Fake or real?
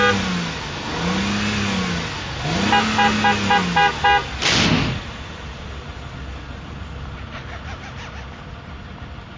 real